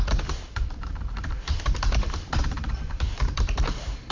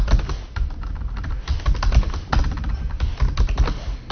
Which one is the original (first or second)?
second